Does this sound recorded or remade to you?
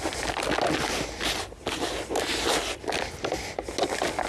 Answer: recorded